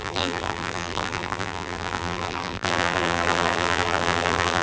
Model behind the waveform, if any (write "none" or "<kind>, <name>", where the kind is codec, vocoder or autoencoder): vocoder, BigVGAN v2